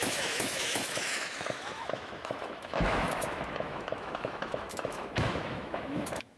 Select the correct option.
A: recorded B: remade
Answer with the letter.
B